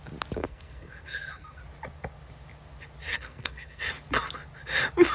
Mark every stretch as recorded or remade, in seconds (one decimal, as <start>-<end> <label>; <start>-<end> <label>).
0.0-0.4 recorded; 0.4-1.6 remade; 1.6-3.1 recorded; 3.1-3.9 remade; 3.9-5.1 recorded